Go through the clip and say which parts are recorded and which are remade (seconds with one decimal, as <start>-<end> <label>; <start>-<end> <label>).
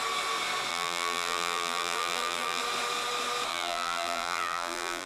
0.0-0.7 recorded; 0.7-2.6 remade; 2.6-3.5 recorded; 3.5-5.1 remade